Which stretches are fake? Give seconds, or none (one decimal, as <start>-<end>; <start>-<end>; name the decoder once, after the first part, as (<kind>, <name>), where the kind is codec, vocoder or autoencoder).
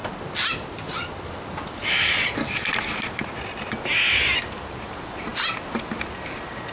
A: 0.0-2.8 (vocoder, BigVGAN v2); 5.3-5.8